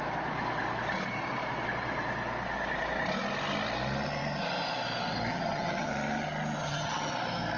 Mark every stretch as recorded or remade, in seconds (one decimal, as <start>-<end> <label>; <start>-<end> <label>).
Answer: 0.0-5.3 recorded; 5.3-5.9 remade; 5.9-6.6 recorded; 6.6-7.1 remade; 7.1-7.6 recorded